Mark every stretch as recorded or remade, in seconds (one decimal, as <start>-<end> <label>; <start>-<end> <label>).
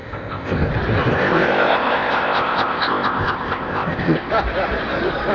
0.0-0.7 remade; 0.7-1.1 recorded; 1.1-4.3 remade; 4.3-5.3 recorded